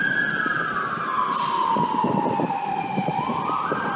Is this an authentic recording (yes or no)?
yes